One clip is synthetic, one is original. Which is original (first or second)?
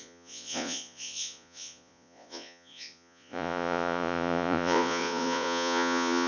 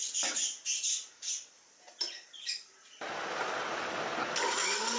second